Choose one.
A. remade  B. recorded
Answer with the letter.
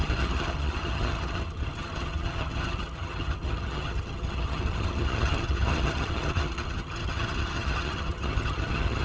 A